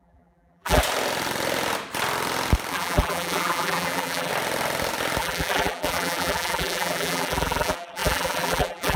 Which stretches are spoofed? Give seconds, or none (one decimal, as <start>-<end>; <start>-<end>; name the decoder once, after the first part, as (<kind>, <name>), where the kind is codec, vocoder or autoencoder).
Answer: 0.0-0.8 (vocoder, BigVGAN v2); 2.7-4.3; 5.2-9.0